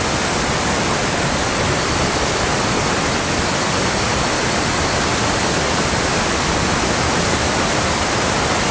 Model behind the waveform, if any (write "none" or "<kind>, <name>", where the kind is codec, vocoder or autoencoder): none